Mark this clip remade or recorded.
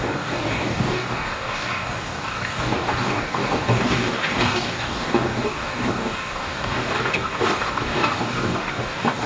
remade